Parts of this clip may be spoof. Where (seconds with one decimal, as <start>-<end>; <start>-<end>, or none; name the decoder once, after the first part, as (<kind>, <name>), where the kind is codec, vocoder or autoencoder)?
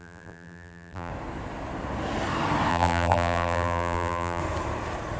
0.0-1.1 (vocoder, BigVGAN v2); 2.7-4.4